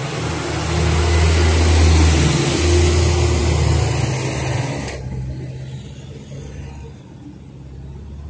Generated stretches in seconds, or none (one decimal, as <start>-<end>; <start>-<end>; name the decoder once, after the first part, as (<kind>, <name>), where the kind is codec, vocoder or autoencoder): none